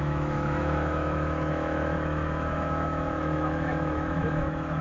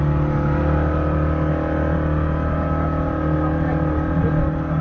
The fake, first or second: first